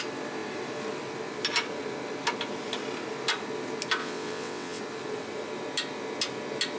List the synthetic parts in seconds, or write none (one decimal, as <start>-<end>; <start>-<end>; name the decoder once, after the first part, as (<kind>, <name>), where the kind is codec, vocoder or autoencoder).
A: 4.0-4.8 (vocoder, WaveNeXt)